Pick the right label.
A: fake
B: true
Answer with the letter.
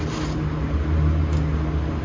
B